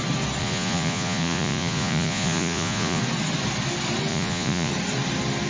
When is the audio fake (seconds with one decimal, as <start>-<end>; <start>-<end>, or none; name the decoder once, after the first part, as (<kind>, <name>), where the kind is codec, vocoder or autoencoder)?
0.4-3.0 (vocoder, Vocos); 4.1-4.7